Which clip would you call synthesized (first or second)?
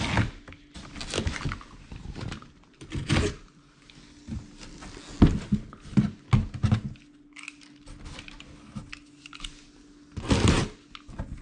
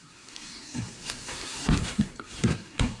second